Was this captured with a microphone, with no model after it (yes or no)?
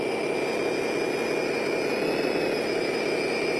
yes